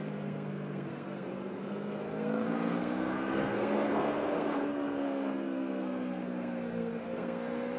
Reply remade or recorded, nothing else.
remade